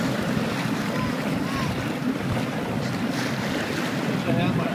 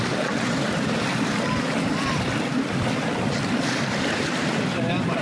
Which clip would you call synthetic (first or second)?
second